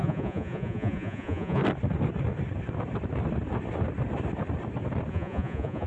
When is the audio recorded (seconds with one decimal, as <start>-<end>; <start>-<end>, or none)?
1.6-5.1